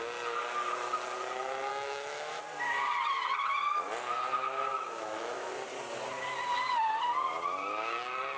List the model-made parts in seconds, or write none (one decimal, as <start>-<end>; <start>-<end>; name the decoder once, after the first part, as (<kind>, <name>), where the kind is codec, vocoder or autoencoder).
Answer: 1.7-2.4 (autoencoder, DAC-VAE); 4.7-5.5

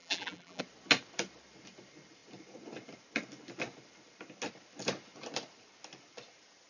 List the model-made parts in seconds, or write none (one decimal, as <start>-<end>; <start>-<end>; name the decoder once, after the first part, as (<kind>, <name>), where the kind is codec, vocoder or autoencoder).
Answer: 0.0-0.6 (vocoder, BigVGAN v2)

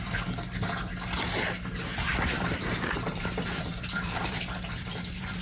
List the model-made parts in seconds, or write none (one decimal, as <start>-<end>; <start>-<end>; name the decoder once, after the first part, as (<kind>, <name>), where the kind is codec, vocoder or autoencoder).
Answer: 2.1-5.4 (vocoder, BigVGAN v2)

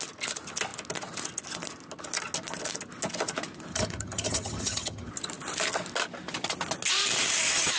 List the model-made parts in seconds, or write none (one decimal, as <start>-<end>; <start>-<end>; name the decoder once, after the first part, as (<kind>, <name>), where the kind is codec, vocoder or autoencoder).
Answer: 3.7-5.1 (vocoder, HiFi-GAN)

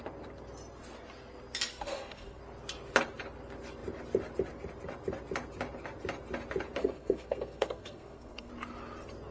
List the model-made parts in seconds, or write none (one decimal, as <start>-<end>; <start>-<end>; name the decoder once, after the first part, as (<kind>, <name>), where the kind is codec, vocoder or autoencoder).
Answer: 1.7-2.4 (codec, SNAC); 6.8-8.5

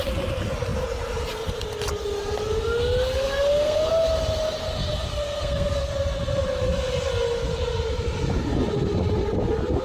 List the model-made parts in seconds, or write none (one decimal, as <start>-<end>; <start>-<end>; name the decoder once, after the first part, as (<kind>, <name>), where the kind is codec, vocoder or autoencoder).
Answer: 3.1-3.9 (codec, SNAC); 5.1-5.8